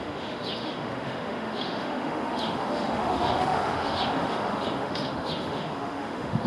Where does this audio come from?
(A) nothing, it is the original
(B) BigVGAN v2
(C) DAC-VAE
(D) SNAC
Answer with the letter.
C